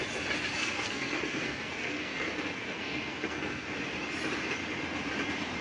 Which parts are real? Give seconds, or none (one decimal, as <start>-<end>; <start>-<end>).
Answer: 0.0-0.6; 3.7-5.6